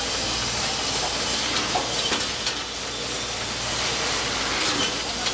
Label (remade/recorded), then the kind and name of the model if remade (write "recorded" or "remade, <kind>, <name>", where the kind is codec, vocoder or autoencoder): recorded